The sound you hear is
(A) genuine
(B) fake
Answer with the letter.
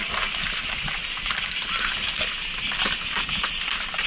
A